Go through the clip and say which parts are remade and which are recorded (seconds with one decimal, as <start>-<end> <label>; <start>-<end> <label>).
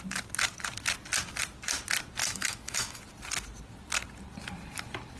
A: 0.0-2.2 recorded; 2.2-3.0 remade; 3.0-5.2 recorded